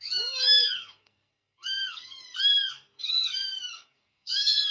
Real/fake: fake